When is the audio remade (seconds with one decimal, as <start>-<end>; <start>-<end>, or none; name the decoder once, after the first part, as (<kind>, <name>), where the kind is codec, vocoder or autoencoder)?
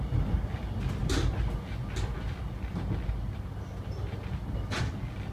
none